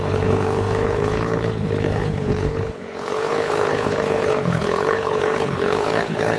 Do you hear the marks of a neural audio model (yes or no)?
yes